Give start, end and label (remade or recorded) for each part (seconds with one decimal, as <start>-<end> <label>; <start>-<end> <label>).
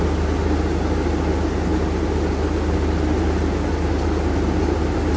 0.0-5.2 recorded